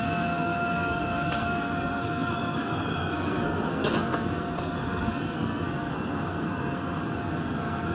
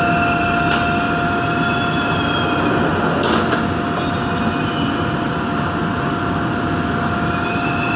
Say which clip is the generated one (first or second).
first